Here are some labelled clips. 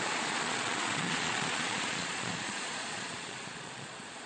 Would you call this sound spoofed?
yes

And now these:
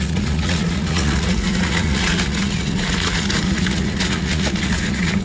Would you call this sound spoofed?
yes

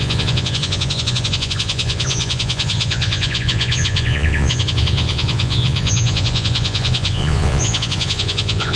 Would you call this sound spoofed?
yes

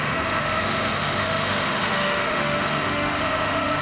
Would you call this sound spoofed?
yes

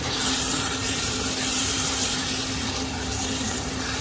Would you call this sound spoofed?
yes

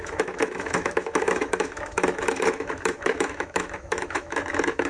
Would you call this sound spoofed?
yes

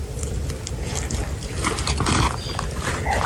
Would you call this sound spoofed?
no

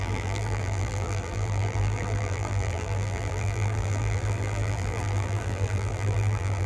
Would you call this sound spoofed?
yes